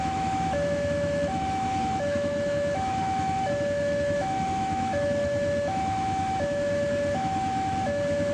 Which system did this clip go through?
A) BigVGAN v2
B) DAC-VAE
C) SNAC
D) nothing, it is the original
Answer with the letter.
B